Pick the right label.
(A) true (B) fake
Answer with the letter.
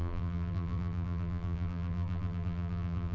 B